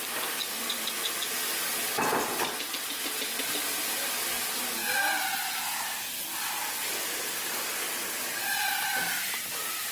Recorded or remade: recorded